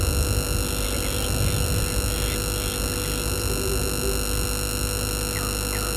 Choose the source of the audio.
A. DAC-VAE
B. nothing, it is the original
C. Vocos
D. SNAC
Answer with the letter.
B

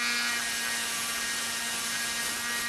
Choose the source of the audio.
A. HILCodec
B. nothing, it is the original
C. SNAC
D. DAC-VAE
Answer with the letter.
B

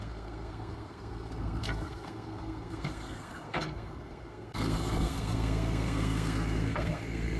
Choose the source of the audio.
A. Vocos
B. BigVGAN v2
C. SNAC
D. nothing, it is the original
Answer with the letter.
C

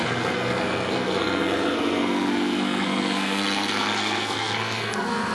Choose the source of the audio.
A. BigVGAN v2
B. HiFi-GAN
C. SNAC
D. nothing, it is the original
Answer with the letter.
C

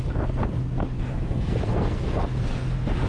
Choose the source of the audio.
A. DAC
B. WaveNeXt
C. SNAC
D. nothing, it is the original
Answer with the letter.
C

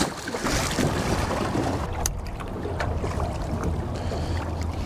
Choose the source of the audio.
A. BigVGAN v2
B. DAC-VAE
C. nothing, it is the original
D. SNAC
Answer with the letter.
C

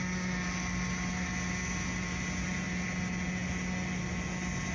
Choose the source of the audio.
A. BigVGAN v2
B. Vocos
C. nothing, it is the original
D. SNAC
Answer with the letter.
C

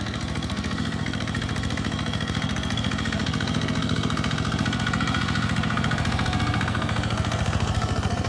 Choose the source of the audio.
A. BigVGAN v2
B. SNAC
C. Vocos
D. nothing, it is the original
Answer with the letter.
B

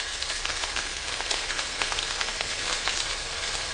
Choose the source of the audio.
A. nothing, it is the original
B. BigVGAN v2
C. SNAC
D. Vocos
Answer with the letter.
C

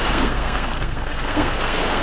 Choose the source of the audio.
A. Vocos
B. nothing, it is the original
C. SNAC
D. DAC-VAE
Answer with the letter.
C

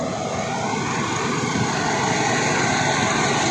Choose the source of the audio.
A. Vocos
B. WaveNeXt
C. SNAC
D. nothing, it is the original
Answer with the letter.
D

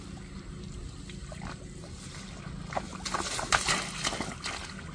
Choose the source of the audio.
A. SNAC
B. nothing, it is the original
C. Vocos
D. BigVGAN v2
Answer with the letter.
B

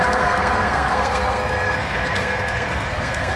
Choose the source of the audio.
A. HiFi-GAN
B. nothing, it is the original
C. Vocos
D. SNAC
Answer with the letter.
D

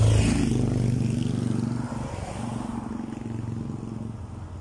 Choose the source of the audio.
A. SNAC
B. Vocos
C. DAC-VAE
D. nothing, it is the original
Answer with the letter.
D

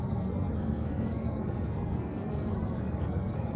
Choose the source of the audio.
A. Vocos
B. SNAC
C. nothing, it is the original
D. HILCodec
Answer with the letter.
B